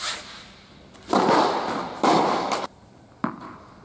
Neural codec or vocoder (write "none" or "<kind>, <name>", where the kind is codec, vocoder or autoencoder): none